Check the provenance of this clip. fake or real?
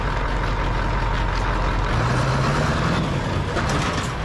real